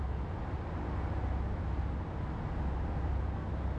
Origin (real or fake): real